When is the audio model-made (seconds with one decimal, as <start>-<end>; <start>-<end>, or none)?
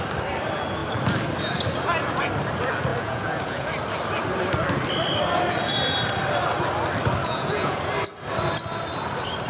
2.9-3.7; 7.2-7.8